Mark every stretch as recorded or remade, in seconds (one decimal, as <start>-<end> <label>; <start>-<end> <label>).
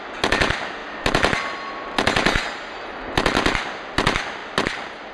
0.0-5.1 recorded